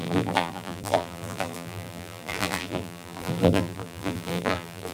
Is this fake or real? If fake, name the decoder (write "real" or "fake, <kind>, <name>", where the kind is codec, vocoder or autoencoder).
fake, vocoder, BigVGAN v2